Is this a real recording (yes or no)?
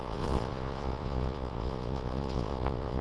no